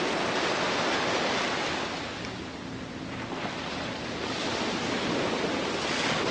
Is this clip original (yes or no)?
yes